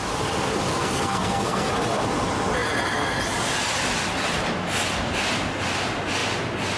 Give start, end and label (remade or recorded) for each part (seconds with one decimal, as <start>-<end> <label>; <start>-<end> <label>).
0.0-0.7 recorded; 0.7-1.7 remade; 1.7-6.8 recorded